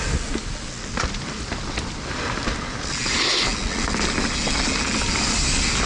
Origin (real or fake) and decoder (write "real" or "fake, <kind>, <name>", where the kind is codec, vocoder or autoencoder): real